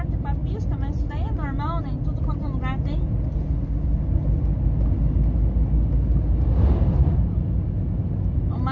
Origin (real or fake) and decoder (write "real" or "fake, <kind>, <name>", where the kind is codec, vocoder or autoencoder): real